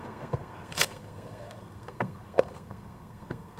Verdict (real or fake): fake